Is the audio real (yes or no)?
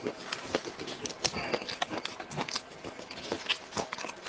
yes